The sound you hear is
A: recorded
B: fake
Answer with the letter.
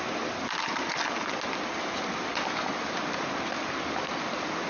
A